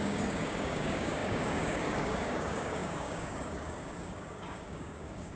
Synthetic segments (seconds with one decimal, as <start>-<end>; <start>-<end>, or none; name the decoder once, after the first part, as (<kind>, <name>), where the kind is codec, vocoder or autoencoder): 0.0-5.4 (codec, DAC)